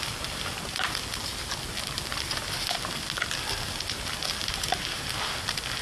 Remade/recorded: recorded